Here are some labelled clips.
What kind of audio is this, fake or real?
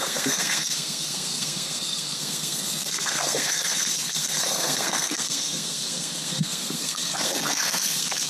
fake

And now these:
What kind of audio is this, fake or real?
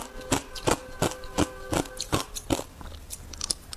real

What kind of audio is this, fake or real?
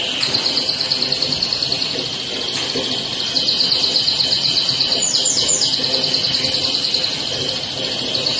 real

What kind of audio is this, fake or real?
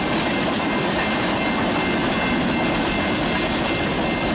real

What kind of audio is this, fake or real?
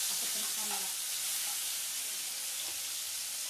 real